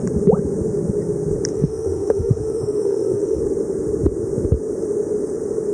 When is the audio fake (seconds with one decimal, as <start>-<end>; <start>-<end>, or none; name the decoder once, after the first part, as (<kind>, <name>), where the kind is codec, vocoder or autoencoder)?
1.5-3.4 (autoencoder, DAC-VAE)

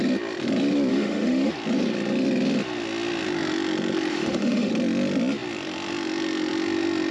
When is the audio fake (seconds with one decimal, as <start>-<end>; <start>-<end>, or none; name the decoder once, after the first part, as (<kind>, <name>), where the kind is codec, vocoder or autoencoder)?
0.9-1.5 (autoencoder, DAC-VAE); 4.1-4.7

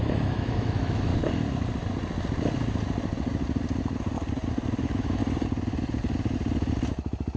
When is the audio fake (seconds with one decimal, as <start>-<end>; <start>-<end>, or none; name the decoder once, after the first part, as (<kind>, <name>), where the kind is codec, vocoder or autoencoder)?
0.0-1.1 (autoencoder, DAC-VAE); 4.8-5.2

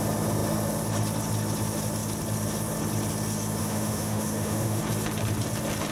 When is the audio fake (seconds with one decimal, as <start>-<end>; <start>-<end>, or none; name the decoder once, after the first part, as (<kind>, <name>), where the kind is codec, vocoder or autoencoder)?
3.6-4.8 (autoencoder, DAC-VAE)

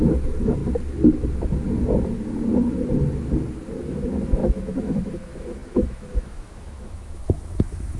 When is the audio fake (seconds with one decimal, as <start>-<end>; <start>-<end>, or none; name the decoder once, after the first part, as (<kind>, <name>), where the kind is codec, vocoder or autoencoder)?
0.0-0.6 (autoencoder, DAC-VAE); 3.8-8.0

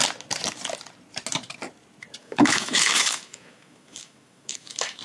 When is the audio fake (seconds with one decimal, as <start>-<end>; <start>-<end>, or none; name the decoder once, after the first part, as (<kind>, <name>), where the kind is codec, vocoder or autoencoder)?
2.2-5.0 (autoencoder, DAC-VAE)

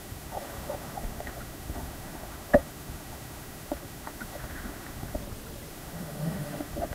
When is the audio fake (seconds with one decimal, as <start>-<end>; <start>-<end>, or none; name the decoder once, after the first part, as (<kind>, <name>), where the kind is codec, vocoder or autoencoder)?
0.0-5.2 (autoencoder, DAC-VAE); 5.7-6.9

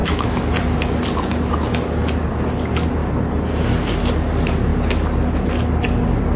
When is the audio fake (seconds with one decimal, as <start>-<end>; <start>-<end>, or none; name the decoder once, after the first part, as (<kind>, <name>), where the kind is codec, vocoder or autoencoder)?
0.0-0.6 (autoencoder, DAC-VAE)